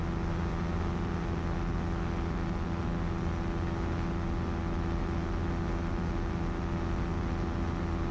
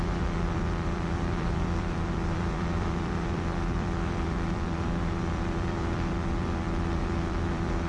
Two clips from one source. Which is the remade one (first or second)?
second